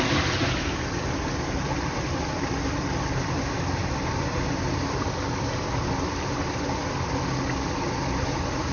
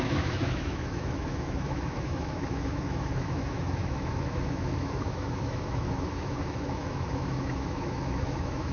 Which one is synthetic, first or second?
second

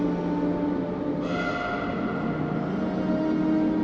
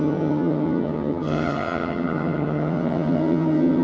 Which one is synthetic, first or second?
second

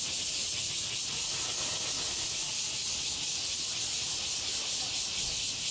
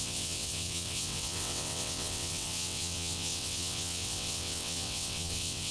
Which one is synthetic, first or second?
second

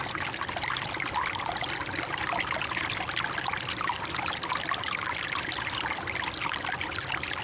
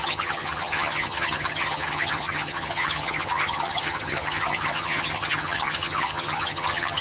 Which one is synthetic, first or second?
second